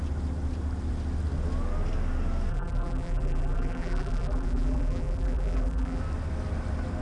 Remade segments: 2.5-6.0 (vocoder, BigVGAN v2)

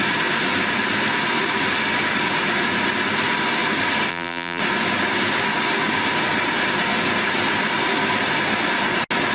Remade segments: 4.1-4.6 (vocoder, BigVGAN v2)

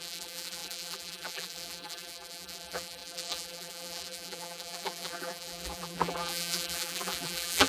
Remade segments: 0.0-7.7 (vocoder, BigVGAN v2)

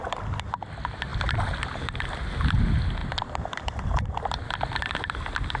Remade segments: 3.0-4.5 (vocoder, BigVGAN v2)

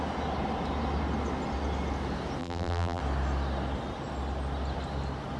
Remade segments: 2.4-3.0 (vocoder, BigVGAN v2)

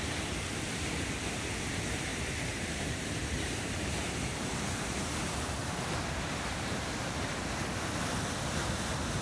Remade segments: 2.1-7.3 (vocoder, BigVGAN v2)

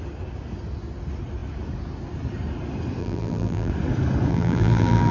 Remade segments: 3.0-3.7 (vocoder, BigVGAN v2); 4.3-5.1